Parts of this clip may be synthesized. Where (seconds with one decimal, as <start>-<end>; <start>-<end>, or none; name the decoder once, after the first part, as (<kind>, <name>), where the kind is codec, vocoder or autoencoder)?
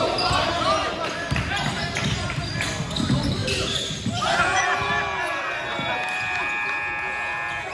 none